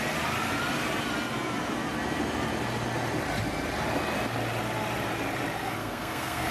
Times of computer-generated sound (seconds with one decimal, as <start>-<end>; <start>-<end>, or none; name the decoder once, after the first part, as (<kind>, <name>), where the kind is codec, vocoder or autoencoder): 5.8-6.5 (codec, SNAC)